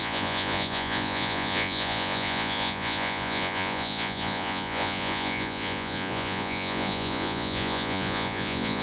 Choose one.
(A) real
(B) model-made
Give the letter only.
B